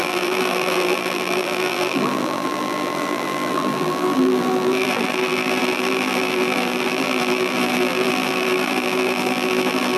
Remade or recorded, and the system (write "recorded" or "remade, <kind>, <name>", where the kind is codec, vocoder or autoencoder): remade, vocoder, BigVGAN v2